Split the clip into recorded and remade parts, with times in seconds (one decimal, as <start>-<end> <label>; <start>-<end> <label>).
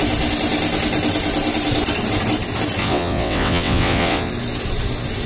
0.0-2.8 recorded; 2.8-4.3 remade; 4.3-5.3 recorded